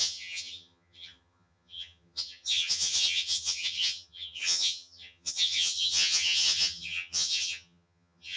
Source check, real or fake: fake